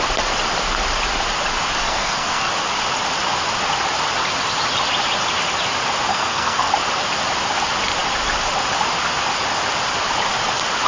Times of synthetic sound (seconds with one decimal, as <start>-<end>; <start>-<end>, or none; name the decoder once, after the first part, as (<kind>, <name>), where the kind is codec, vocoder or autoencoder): 1.8-2.5 (codec, SNAC); 6.1-6.7